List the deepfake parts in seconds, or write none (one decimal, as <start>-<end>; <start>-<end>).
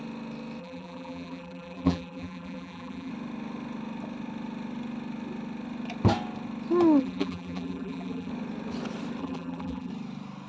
0.6-3.1; 7.0-8.3; 9.2-9.9